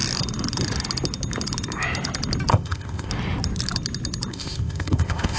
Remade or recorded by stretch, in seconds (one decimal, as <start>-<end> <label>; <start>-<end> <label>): 0.0-2.5 recorded; 2.5-3.1 remade; 3.1-4.3 recorded; 4.3-5.4 remade